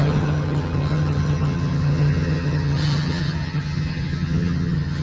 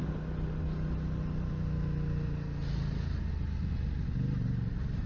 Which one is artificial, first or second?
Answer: first